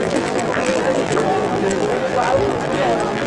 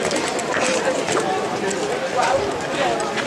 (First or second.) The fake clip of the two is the first